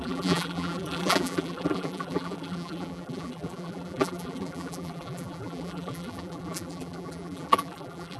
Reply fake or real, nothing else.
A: fake